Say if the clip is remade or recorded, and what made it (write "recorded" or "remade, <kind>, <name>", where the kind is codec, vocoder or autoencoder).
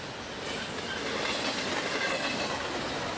recorded